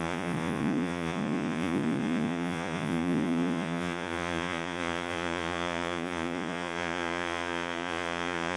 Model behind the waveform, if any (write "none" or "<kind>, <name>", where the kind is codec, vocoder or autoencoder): vocoder, Vocos